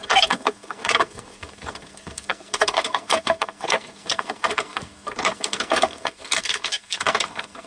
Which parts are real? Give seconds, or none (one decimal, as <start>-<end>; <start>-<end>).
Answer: none